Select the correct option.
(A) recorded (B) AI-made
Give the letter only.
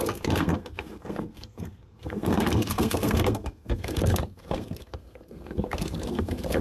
B